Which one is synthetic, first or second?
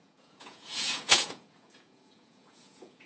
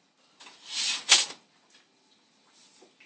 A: first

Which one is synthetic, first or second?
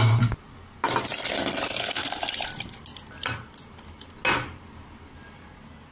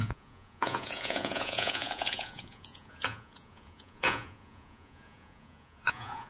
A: second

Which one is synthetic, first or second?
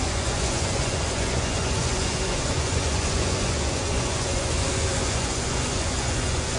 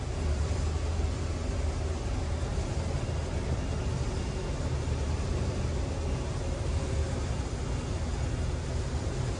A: first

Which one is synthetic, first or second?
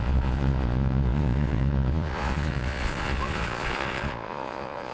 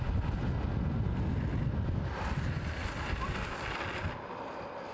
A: first